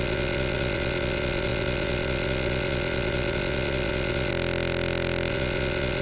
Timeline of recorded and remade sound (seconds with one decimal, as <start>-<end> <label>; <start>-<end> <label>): 0.0-4.3 remade; 4.3-5.3 recorded; 5.3-6.0 remade